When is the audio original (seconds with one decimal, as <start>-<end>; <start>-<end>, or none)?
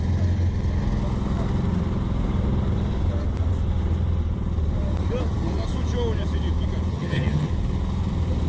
0.0-6.9; 7.5-8.5